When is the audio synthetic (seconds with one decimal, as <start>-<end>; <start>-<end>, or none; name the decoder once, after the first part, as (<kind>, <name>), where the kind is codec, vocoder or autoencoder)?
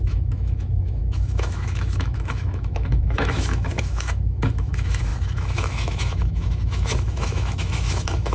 0.0-8.3 (autoencoder, DAC-VAE)